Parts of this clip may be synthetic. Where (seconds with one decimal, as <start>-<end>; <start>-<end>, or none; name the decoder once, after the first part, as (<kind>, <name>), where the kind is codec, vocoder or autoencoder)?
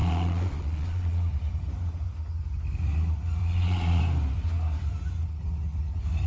0.0-1.3 (vocoder, Vocos); 3.4-4.0